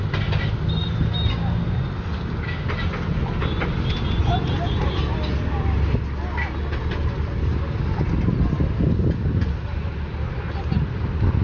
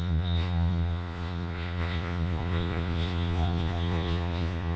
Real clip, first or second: first